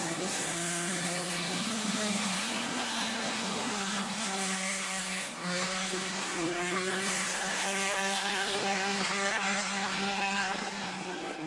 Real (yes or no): no